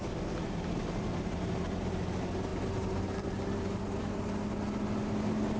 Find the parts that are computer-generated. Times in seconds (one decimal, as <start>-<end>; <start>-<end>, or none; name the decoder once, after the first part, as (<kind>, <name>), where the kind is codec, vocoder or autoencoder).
none